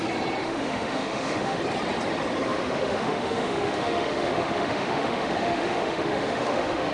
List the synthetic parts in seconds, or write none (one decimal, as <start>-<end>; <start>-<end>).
0.4-1.6; 2.5-6.9